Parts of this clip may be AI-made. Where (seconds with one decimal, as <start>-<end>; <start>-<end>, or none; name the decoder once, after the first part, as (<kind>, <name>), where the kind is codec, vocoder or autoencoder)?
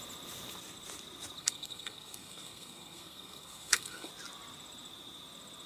1.4-4.1 (codec, SNAC)